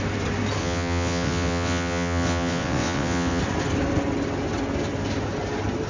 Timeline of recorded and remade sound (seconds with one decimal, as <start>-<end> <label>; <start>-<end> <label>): 0.0-0.6 recorded; 0.6-3.4 remade; 3.4-5.9 recorded